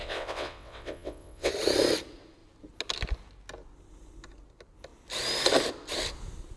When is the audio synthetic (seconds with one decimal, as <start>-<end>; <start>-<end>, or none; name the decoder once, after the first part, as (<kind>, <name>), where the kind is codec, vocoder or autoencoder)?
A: 0.0-1.5 (vocoder, WaveNeXt)